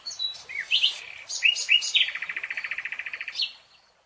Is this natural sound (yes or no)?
no